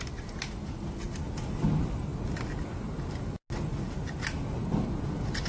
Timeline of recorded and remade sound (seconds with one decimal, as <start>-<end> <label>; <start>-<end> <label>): 0.0-5.5 recorded

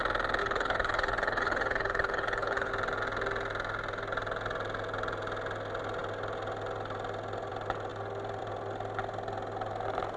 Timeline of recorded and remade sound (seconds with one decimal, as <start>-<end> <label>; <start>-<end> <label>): 0.0-0.4 recorded; 0.4-2.7 remade; 2.7-10.2 recorded

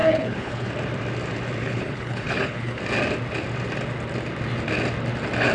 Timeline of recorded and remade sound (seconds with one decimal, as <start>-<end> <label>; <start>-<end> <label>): 0.0-0.7 remade; 0.7-1.6 recorded; 1.6-2.8 remade; 2.8-5.5 recorded